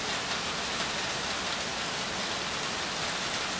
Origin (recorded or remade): recorded